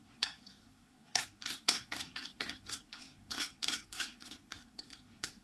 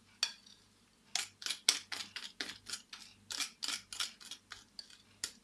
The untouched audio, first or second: second